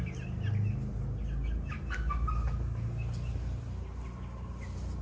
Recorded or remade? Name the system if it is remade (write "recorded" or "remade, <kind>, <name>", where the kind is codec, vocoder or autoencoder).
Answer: recorded